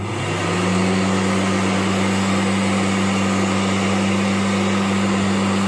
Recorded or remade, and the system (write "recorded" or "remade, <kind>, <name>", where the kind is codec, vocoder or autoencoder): recorded